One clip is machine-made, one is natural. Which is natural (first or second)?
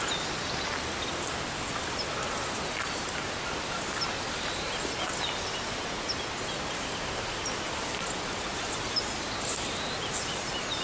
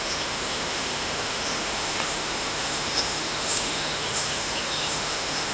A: first